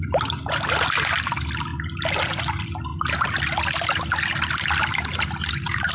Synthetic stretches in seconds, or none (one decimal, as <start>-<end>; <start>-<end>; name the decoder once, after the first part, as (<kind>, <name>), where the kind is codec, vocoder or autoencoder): 2.9-3.4 (vocoder, BigVGAN v2); 4.8-5.9